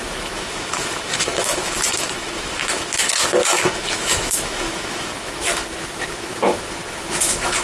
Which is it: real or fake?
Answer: fake